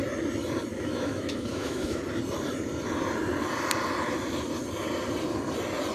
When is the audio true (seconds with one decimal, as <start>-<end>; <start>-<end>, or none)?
0.0-0.7; 2.0-5.9